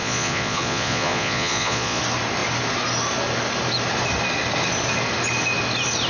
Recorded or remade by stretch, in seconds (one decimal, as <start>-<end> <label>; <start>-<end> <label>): 0.0-2.0 remade; 2.0-6.1 recorded